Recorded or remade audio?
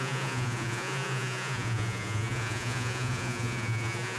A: remade